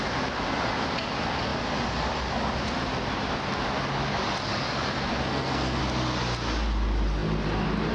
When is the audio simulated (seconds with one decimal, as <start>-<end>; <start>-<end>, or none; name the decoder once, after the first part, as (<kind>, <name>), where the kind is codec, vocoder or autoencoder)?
5.3-5.8 (codec, SNAC)